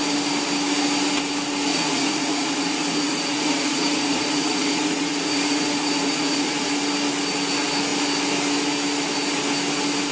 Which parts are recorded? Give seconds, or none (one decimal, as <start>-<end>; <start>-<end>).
0.0-1.7; 6.7-10.1